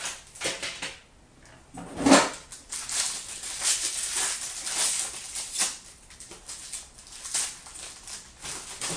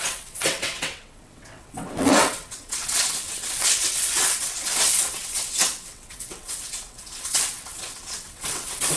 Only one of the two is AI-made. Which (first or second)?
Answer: second